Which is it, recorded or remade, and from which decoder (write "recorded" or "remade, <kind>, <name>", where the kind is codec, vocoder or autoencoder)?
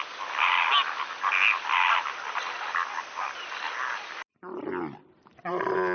recorded